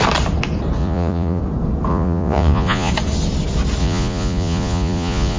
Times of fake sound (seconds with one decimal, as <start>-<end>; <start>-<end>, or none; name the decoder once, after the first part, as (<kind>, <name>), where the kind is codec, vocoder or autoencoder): 0.8-1.4 (vocoder, Vocos); 1.9-2.9; 3.8-5.4